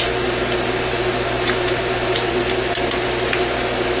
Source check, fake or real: real